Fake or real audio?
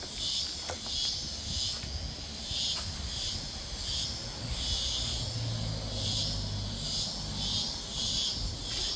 real